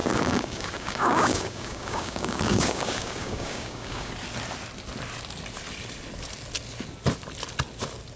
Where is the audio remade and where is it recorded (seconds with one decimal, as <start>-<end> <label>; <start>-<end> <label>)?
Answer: 0.0-4.1 remade; 4.1-8.2 recorded